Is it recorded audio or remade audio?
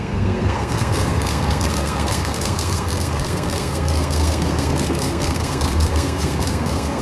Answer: remade